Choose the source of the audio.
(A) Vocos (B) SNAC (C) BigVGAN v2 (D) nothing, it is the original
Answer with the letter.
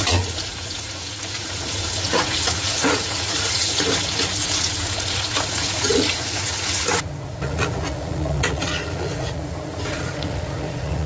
A